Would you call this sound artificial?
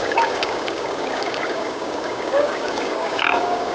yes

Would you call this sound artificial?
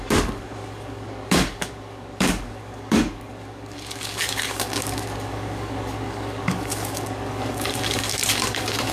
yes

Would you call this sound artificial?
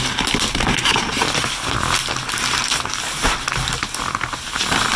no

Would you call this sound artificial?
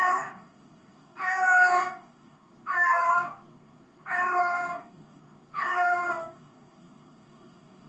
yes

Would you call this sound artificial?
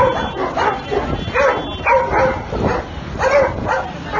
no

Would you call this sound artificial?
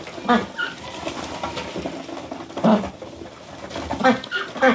no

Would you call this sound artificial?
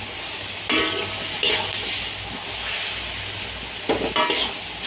no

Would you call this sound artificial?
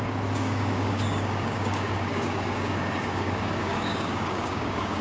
yes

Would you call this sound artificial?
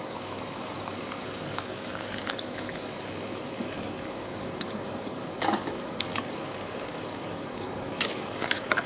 yes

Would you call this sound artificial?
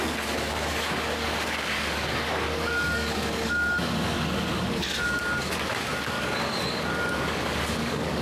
yes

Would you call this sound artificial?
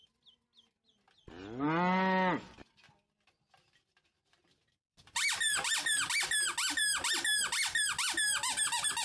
no